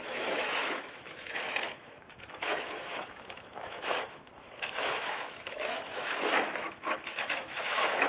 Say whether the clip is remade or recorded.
remade